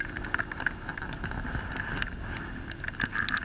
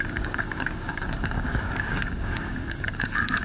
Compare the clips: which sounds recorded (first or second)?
first